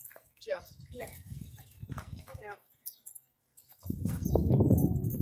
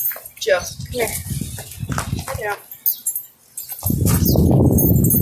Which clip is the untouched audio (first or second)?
second